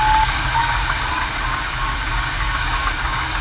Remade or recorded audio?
remade